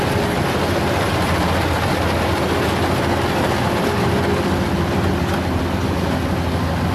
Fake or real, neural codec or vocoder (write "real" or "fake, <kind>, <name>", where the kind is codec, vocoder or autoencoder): real